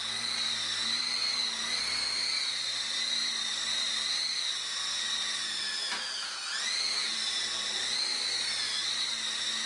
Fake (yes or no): no